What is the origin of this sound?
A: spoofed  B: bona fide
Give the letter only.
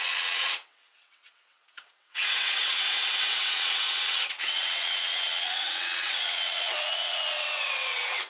A